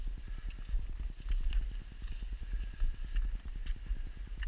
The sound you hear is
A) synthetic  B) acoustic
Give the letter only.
B